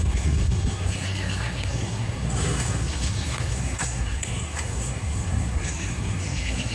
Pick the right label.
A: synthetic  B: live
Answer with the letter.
A